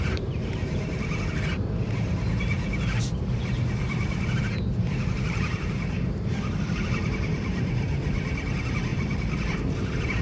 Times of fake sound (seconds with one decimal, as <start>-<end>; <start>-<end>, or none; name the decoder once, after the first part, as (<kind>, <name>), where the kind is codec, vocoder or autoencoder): 0.0-10.2 (vocoder, BigVGAN v2)